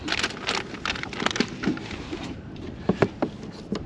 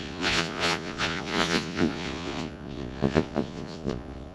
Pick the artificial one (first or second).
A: second